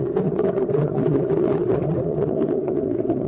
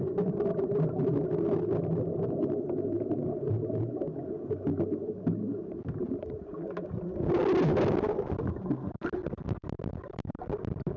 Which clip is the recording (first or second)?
second